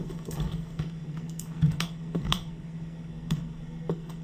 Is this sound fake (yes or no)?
yes